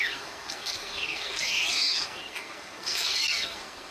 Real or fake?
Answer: fake